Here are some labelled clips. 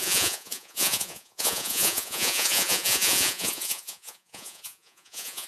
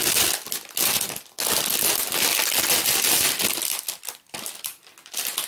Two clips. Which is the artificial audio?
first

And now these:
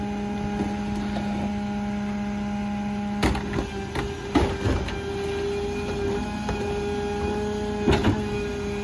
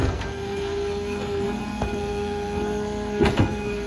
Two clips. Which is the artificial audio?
second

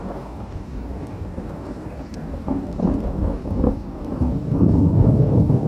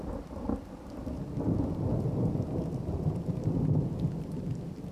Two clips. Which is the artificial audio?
first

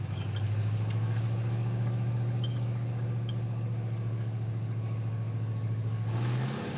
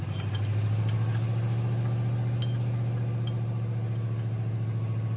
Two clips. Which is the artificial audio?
first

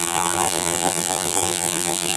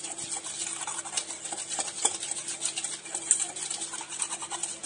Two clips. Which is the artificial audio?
first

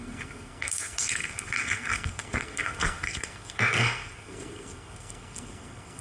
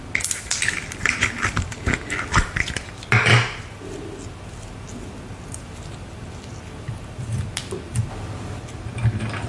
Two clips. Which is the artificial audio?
first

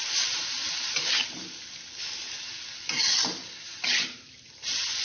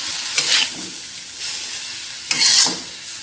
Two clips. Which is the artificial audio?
first